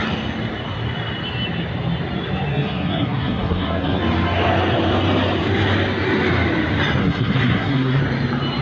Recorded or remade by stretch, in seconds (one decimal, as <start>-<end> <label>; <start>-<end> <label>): 0.0-2.5 recorded; 2.5-4.0 remade; 4.0-7.0 recorded; 7.0-8.0 remade; 8.0-8.6 recorded